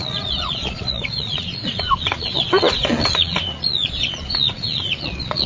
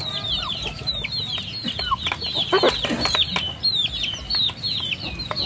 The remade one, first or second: first